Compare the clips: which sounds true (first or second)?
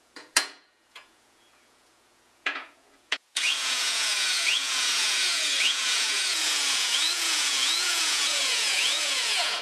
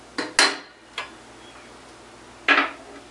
second